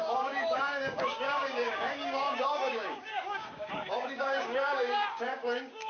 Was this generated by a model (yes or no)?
yes